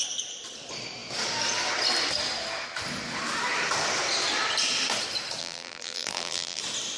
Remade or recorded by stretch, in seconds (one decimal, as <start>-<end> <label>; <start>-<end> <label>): 0.0-5.4 recorded; 5.4-6.6 remade; 6.6-7.0 recorded